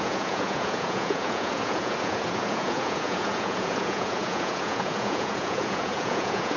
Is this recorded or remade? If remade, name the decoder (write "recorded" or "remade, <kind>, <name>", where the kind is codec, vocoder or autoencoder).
remade, vocoder, Vocos